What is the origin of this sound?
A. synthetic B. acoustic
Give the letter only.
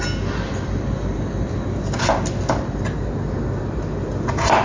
B